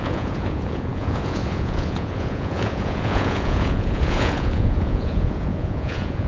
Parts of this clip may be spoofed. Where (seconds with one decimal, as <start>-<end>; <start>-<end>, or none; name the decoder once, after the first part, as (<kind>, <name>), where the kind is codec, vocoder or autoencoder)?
0.0-6.3 (vocoder, Vocos)